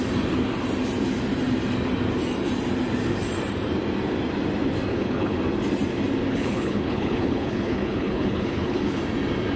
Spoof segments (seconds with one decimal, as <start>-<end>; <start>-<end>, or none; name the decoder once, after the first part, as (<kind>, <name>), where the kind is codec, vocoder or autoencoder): 4.9-5.4 (codec, HILCodec); 6.3-9.0